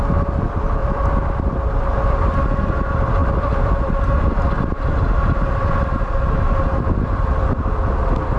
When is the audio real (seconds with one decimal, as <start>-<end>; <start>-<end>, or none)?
0.0-0.8; 1.8-3.2; 4.2-8.4